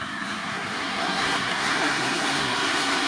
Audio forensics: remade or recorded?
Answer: remade